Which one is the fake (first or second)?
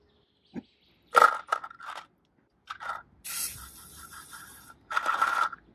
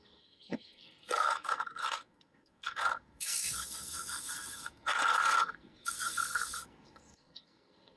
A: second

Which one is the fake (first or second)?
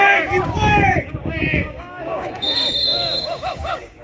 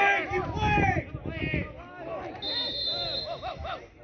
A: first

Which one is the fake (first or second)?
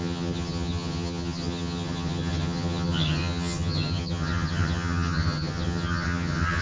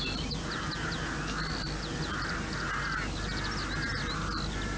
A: first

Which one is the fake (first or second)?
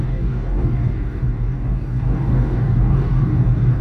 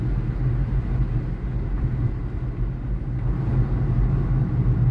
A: first